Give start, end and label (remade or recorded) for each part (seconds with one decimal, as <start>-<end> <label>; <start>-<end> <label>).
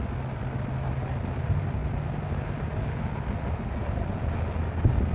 0.0-5.1 recorded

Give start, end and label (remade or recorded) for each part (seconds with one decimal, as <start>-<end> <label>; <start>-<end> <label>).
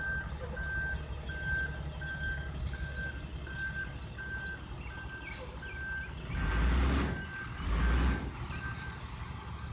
0.0-9.7 recorded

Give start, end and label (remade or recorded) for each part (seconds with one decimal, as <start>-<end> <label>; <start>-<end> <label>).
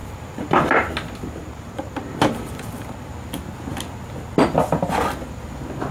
0.0-0.5 remade; 0.5-1.4 recorded; 1.4-3.1 remade; 3.1-5.9 recorded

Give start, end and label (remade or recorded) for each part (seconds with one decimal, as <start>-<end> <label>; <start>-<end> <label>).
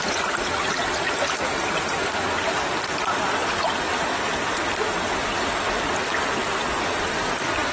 0.0-7.7 recorded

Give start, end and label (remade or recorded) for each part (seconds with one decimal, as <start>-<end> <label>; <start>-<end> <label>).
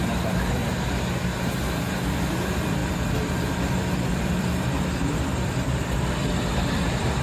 0.0-0.6 remade; 0.6-1.9 recorded; 1.9-2.8 remade; 2.8-3.5 recorded; 3.5-7.2 remade